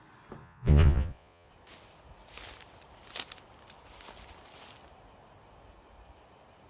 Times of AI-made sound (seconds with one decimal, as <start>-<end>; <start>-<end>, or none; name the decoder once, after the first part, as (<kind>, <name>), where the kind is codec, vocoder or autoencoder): 0.4-1.5 (vocoder, Vocos)

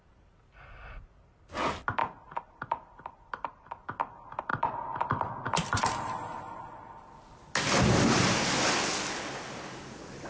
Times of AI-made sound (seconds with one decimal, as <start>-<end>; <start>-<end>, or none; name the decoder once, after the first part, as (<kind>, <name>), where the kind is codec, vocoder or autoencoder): 2.0-3.5 (vocoder, BigVGAN v2); 4.5-8.7

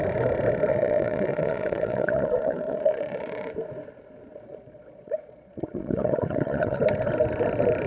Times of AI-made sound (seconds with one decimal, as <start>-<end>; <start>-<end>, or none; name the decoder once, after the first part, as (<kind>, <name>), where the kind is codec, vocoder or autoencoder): 0.7-3.5 (vocoder, Vocos); 4.3-6.8

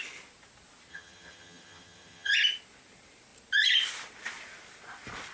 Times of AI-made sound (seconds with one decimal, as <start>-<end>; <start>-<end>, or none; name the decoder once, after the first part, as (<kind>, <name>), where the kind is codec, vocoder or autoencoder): 0.9-2.3 (vocoder, HiFi-GAN)